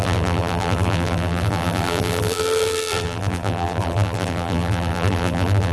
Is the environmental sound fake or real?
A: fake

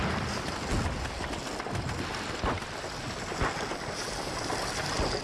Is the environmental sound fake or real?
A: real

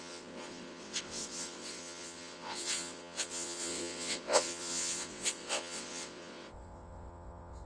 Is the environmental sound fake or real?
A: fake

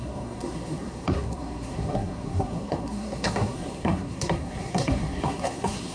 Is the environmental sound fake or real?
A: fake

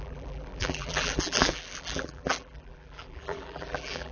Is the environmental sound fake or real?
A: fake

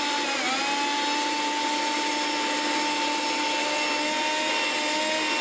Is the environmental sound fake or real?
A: real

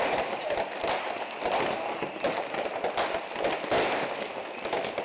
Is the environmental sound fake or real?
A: real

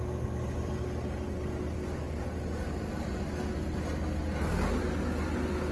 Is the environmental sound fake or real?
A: real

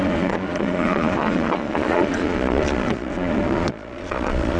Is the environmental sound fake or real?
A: fake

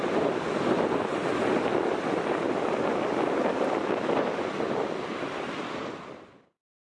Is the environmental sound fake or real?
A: real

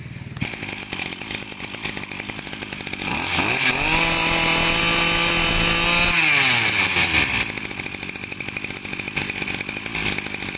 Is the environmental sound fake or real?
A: real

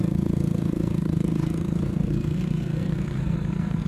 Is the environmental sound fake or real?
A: fake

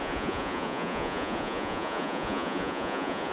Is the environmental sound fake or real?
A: fake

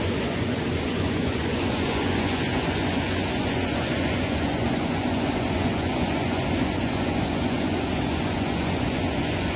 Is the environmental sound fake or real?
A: fake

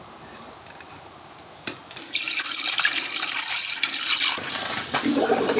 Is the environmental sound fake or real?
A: real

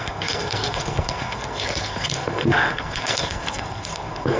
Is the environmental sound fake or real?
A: fake